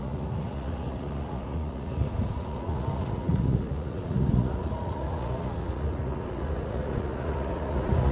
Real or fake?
fake